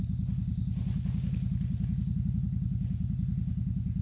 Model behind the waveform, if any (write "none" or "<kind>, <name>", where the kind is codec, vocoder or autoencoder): none